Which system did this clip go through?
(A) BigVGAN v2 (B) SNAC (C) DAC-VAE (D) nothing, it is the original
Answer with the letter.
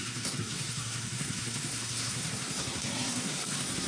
B